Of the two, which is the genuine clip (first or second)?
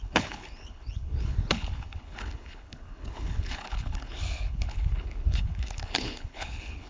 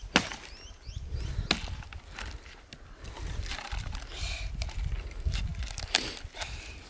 second